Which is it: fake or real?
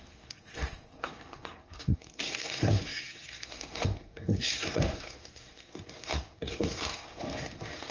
fake